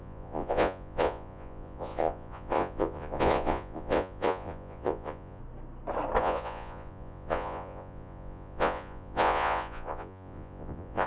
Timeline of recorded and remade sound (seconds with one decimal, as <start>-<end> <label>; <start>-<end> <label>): 0.0-5.4 remade; 5.4-6.2 recorded; 6.2-11.1 remade